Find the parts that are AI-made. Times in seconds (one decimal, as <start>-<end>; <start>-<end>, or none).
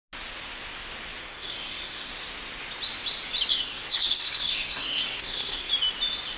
1.2-2.1; 3.5-5.7